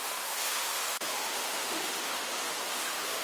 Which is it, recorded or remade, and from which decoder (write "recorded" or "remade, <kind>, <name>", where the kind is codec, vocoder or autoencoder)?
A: remade, autoencoder, DAC-VAE